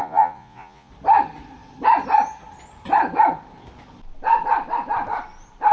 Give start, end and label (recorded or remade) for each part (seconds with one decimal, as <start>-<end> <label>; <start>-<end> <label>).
0.0-0.9 remade; 0.9-5.7 recorded